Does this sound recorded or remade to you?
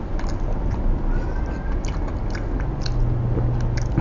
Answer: recorded